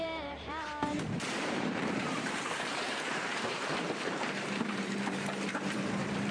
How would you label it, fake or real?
fake